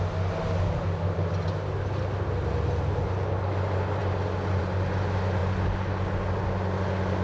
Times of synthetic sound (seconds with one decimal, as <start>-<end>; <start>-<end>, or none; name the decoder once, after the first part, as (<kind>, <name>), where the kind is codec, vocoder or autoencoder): none